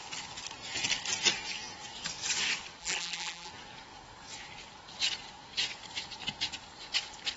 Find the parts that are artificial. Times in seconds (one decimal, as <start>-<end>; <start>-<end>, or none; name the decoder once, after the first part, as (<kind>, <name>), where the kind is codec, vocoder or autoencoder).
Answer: 2.8-3.5 (vocoder, BigVGAN v2)